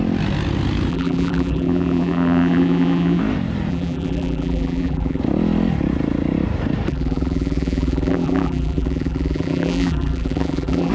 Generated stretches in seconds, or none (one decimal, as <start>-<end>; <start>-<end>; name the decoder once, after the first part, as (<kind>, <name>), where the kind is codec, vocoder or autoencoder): 0.9-3.2 (vocoder, BigVGAN v2); 3.7-5.2; 6.9-10.9